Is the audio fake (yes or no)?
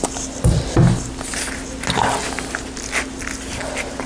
no